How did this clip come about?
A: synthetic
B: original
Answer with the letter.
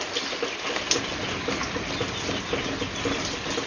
A